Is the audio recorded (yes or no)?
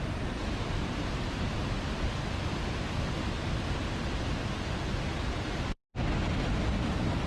yes